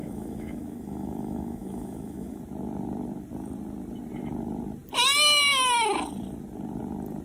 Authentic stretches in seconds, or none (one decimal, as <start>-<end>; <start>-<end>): 2.4-7.2